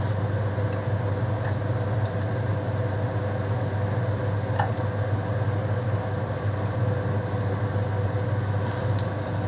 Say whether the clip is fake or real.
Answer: real